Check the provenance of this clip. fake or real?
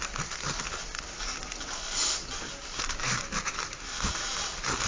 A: real